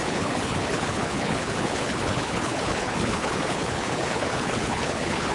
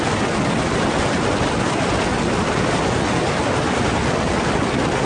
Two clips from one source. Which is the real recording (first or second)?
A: second